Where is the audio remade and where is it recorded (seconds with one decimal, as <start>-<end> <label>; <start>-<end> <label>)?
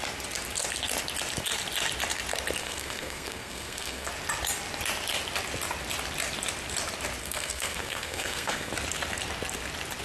0.0-2.6 recorded; 2.6-4.1 remade; 4.1-7.2 recorded; 7.2-8.7 remade; 8.7-10.0 recorded